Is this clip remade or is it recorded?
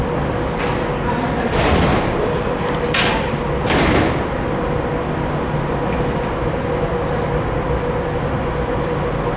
recorded